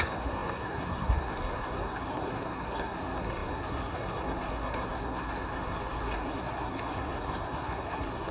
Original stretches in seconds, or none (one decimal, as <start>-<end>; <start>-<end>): none

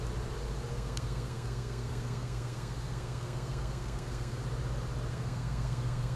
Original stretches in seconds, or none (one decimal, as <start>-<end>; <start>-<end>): 0.0-0.7; 4.4-5.1

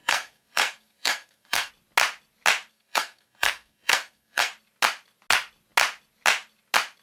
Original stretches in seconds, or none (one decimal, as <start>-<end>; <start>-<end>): 1.7-2.7; 4.5-7.0

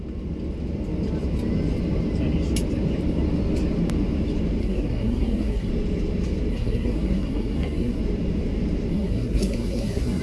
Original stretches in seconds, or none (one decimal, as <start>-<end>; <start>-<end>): 0.0-4.6; 5.7-6.5; 8.0-8.9